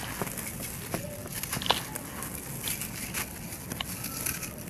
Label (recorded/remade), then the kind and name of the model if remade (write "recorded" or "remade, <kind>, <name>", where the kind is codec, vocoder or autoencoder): recorded